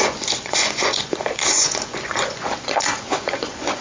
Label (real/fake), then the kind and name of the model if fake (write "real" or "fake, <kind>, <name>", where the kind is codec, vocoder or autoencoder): fake, vocoder, Vocos